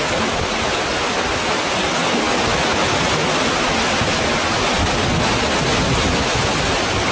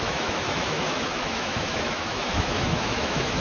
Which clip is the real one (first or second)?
first